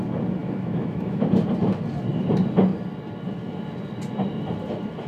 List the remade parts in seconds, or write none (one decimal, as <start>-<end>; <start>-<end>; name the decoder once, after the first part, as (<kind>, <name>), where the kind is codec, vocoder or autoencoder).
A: 0.4-1.3 (autoencoder, DAC-VAE)